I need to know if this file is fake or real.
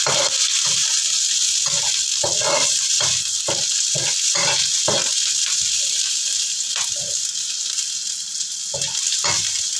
real